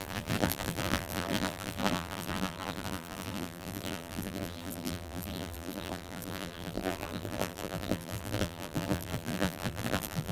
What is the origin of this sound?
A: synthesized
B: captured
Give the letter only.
A